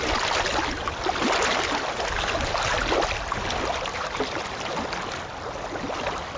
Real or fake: real